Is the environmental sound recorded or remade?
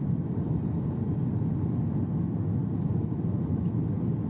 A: recorded